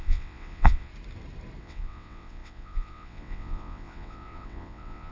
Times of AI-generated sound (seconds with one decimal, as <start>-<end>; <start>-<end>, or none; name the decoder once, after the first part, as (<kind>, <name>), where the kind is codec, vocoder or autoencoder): 0.0-0.9 (vocoder, WaveNeXt); 1.6-5.1